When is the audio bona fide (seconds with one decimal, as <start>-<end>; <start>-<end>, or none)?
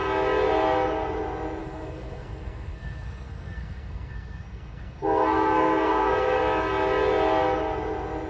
0.0-1.6; 6.4-8.3